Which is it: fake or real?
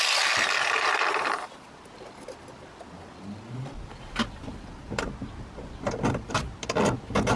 real